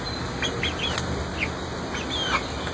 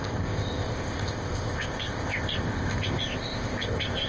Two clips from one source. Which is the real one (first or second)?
first